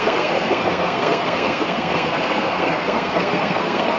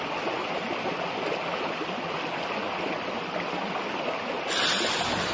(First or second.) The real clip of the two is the second